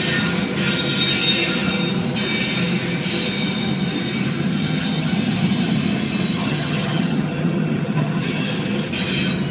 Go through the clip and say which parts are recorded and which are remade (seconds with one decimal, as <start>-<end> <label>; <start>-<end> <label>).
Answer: 0.0-4.5 recorded; 4.5-5.1 remade; 5.1-6.4 recorded; 6.4-8.9 remade; 8.9-9.5 recorded